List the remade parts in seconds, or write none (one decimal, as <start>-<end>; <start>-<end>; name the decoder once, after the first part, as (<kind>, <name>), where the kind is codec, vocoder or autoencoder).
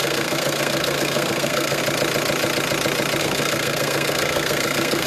0.0-1.8 (codec, SNAC); 3.2-5.1